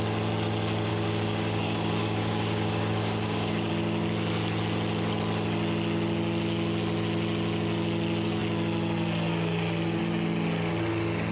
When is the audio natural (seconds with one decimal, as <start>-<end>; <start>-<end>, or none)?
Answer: 0.0-0.9; 3.7-11.3

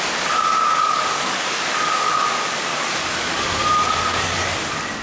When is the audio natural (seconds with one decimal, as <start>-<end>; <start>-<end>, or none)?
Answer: 0.0-0.6; 3.6-4.0; 4.5-5.0

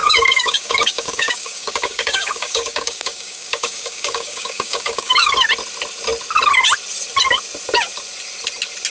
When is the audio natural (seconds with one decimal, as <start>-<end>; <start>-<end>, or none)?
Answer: 5.3-8.9

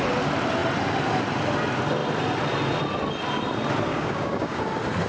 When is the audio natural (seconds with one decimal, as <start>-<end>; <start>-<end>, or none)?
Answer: 0.0-3.9; 4.6-5.1

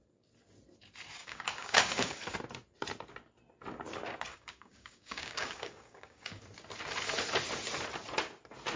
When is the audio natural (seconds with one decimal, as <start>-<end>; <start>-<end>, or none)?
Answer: 0.0-1.2; 2.2-4.3; 6.4-8.8

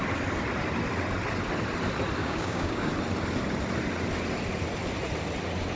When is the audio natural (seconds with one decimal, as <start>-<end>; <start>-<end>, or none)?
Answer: 0.0-2.2; 2.9-5.8

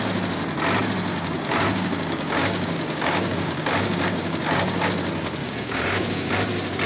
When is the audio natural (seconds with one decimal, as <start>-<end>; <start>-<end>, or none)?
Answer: 0.0-1.1; 4.9-5.4; 6.3-6.9

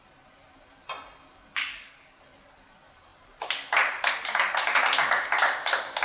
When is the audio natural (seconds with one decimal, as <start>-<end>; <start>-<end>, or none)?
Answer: 0.0-1.6; 2.2-6.0